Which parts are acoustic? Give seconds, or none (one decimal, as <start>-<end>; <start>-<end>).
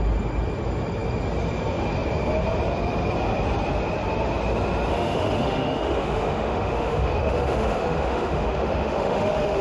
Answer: 0.0-4.9